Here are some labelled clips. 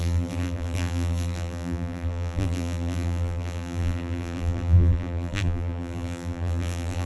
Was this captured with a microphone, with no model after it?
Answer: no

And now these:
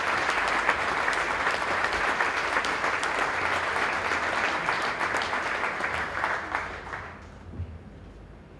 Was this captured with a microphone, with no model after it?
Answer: yes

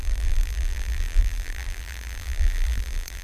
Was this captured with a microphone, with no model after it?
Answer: no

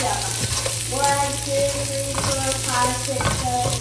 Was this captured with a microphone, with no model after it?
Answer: yes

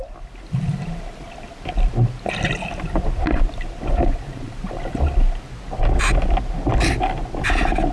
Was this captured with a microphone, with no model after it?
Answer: yes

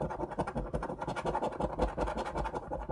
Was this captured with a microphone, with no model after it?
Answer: no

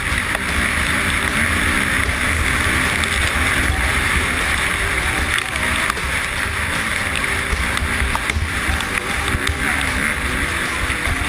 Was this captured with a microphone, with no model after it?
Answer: yes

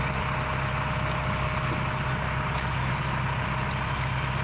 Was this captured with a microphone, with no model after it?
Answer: yes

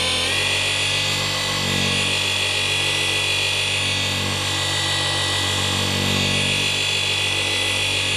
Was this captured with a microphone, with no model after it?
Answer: yes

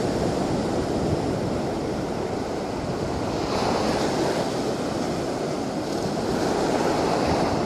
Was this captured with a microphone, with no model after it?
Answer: yes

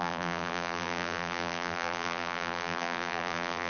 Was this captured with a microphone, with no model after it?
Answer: no